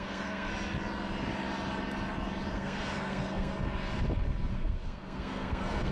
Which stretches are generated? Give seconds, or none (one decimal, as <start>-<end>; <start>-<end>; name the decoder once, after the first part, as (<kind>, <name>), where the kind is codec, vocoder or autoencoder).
0.0-0.5 (codec, SNAC); 2.5-3.5; 4.5-5.9